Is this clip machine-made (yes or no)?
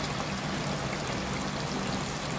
no